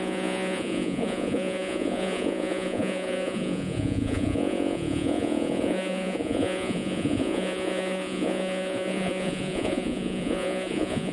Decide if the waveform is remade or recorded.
remade